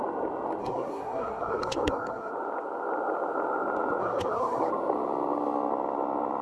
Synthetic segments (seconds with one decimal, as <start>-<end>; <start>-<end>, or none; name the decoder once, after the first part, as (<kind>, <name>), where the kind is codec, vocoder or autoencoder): 0.6-2.3 (codec, SNAC); 4.0-4.7